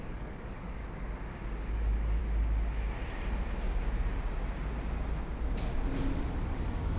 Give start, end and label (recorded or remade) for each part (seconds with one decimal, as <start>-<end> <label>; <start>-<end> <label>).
0.0-0.8 remade; 0.8-1.7 recorded; 1.7-2.2 remade; 2.2-6.3 recorded; 6.3-7.0 remade

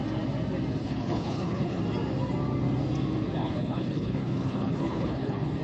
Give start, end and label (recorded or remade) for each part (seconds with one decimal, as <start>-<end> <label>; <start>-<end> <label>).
0.0-0.8 recorded; 0.8-1.8 remade; 1.8-3.4 recorded; 3.4-5.6 remade

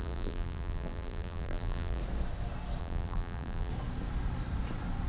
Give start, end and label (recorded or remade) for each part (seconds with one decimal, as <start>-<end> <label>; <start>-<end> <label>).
0.0-2.0 remade; 2.0-2.8 recorded; 2.8-3.7 remade; 3.7-5.1 recorded

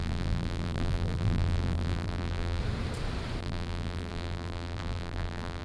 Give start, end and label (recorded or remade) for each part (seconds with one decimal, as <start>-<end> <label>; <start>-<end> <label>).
0.0-2.6 remade; 2.6-3.4 recorded; 3.4-5.6 remade

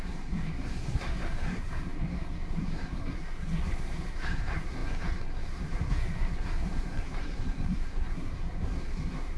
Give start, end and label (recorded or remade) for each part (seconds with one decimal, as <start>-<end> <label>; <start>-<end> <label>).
0.0-9.4 remade

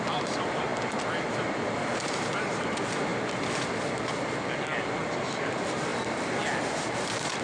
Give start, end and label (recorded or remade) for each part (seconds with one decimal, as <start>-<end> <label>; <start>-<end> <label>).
0.0-3.1 remade; 3.1-5.2 recorded; 5.2-5.9 remade; 5.9-6.6 recorded; 6.6-7.4 remade

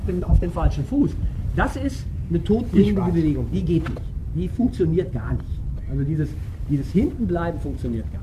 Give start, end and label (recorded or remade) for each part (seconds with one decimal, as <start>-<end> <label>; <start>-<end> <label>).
0.0-0.5 remade; 0.5-8.2 recorded

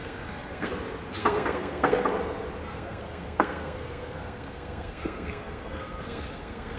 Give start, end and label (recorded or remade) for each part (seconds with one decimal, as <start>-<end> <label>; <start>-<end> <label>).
0.0-0.7 remade; 0.7-1.2 recorded; 1.2-2.1 remade; 2.1-2.7 recorded; 2.7-6.8 remade